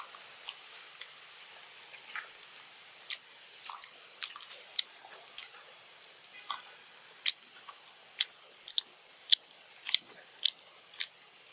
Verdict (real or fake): real